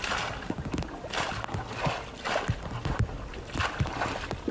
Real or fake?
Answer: real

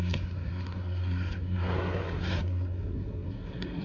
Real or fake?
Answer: fake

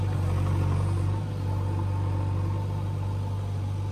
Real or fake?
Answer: real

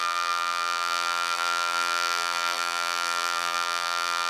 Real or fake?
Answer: fake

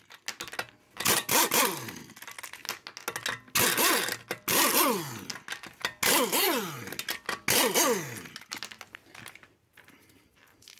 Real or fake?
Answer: real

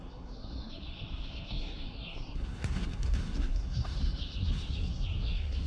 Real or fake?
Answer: fake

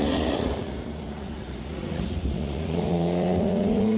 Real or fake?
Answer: fake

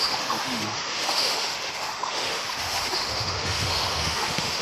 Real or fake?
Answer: fake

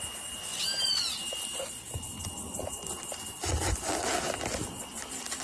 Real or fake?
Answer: real